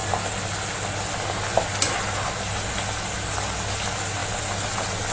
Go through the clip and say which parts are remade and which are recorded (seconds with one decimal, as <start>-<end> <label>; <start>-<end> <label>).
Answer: 0.0-5.1 recorded